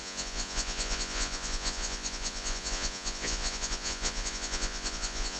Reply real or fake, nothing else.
fake